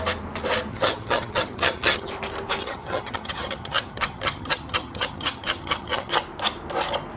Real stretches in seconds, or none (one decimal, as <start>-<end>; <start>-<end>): 0.0-0.7; 2.1-2.6; 6.1-7.2